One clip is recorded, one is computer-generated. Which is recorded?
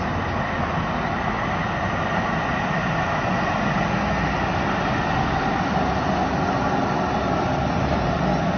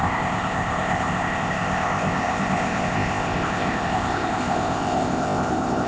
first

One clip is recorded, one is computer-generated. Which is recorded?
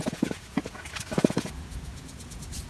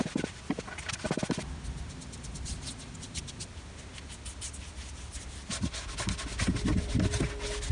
second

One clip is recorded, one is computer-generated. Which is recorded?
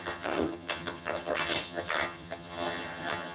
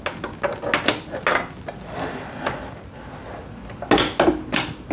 second